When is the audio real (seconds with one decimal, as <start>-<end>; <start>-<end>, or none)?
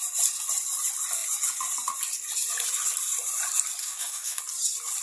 0.0-3.8; 4.4-5.0